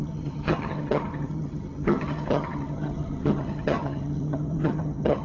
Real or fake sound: fake